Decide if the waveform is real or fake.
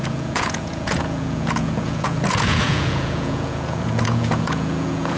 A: fake